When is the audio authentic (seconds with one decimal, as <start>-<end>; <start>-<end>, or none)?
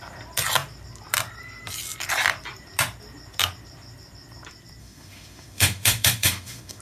0.0-4.8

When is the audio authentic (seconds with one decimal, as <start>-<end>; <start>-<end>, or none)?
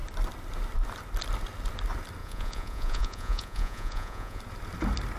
0.0-2.2; 4.4-5.2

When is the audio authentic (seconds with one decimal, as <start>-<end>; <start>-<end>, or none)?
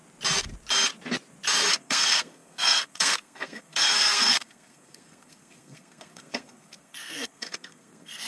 0.0-1.7